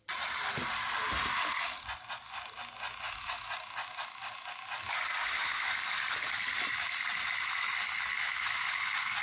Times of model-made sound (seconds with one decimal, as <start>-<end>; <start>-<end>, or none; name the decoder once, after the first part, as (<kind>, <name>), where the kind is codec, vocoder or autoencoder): 5.2-5.7 (autoencoder, DAC-VAE)